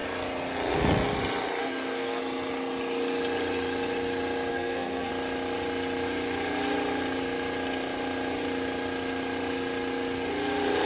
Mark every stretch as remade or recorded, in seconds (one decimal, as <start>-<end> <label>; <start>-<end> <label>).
0.0-1.6 recorded; 1.6-2.2 remade; 2.2-4.5 recorded; 4.5-5.1 remade; 5.1-10.9 recorded